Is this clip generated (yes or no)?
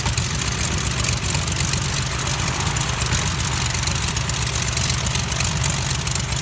no